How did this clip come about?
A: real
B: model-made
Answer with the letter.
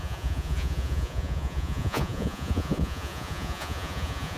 B